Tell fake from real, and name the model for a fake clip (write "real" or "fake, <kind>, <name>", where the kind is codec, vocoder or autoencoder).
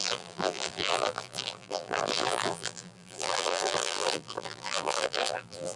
fake, vocoder, BigVGAN v2